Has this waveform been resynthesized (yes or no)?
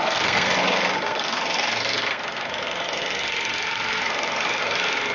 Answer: yes